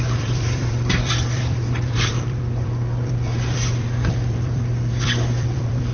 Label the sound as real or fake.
fake